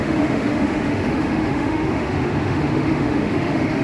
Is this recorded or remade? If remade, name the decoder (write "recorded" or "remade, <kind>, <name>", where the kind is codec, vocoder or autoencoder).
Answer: remade, autoencoder, DAC-VAE